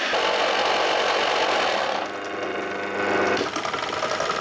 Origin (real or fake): real